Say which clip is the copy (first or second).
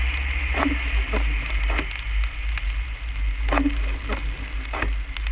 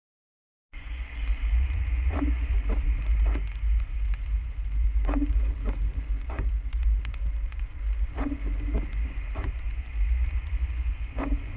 second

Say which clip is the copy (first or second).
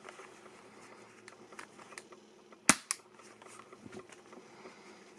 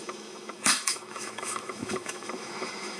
second